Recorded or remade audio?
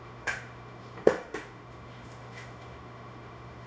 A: remade